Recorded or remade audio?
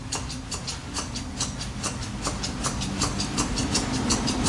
recorded